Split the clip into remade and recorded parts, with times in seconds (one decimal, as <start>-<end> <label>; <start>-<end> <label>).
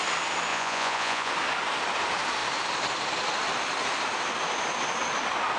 0.0-0.5 recorded; 0.5-1.3 remade; 1.3-5.6 recorded